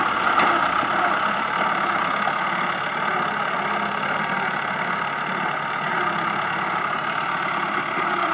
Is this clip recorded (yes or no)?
yes